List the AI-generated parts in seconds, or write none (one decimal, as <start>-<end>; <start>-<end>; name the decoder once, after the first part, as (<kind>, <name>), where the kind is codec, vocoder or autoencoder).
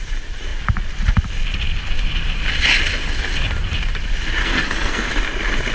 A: 4.4-5.1 (codec, SNAC)